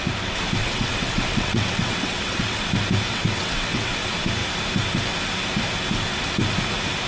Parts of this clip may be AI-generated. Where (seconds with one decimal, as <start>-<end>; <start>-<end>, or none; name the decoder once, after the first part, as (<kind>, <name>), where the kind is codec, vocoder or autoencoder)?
0.6-2.7 (vocoder, WaveNeXt); 3.1-3.9